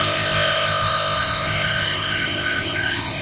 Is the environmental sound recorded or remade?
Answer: remade